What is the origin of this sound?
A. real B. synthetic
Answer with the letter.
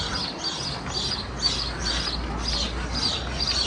A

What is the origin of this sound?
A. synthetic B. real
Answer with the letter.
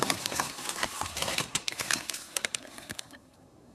A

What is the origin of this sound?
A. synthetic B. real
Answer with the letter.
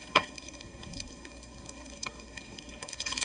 A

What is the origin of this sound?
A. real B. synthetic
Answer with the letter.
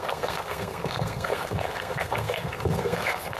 B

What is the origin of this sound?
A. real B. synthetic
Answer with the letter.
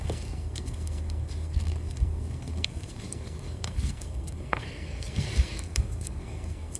B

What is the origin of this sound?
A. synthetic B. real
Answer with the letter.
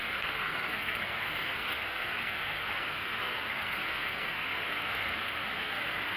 A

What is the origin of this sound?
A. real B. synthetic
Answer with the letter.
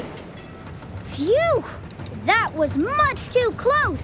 A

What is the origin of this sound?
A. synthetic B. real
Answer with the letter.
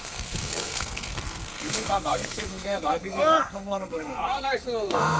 A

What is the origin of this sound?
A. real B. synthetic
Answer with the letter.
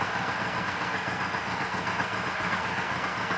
B